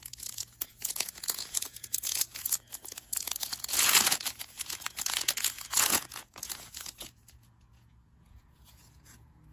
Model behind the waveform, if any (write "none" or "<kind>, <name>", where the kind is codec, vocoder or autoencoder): vocoder, Vocos